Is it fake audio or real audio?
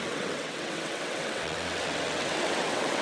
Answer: fake